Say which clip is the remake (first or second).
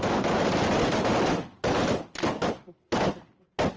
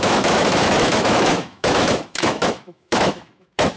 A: second